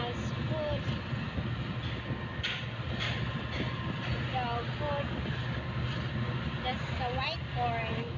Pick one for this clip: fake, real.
real